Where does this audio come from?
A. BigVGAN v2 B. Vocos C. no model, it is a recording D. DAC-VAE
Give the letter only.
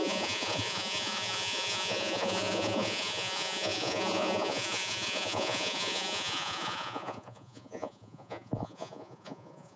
B